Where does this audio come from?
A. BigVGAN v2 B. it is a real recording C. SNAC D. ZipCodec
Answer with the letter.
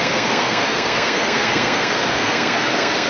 C